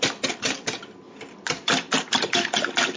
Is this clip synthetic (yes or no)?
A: yes